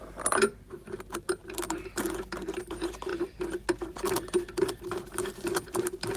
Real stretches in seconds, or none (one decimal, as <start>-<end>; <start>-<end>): 0.0-6.2